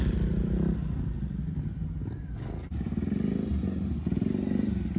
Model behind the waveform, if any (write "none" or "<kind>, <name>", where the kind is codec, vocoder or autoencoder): none